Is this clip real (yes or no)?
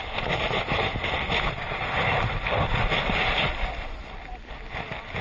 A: yes